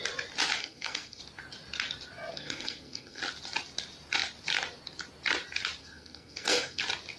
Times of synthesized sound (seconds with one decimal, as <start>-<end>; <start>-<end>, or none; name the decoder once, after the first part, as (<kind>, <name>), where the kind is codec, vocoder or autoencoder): 0.6-1.2 (codec, SNAC); 2.3-3.2; 5.8-6.8